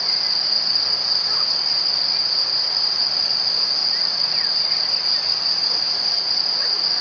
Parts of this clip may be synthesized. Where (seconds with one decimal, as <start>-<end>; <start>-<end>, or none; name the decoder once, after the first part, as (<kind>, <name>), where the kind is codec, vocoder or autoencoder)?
none